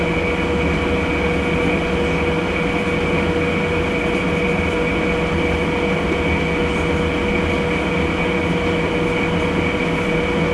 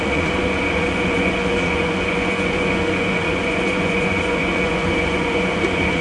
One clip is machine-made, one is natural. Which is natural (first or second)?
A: first